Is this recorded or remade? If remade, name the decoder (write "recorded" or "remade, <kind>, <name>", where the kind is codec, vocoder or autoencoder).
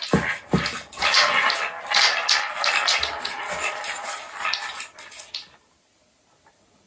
recorded